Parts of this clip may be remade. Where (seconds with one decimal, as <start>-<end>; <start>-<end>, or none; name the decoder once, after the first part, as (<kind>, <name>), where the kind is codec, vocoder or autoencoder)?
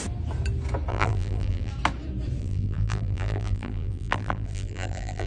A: 0.9-1.7 (vocoder, BigVGAN v2); 2.4-5.3